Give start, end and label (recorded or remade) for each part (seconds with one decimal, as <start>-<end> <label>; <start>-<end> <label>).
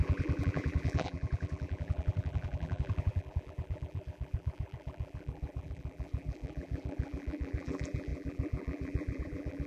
0.0-9.7 remade